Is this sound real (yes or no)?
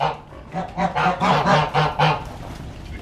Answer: yes